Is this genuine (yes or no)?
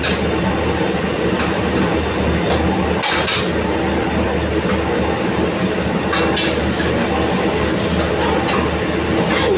yes